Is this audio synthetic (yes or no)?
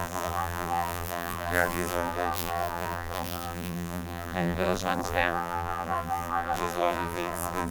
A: yes